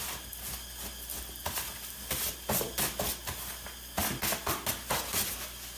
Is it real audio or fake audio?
real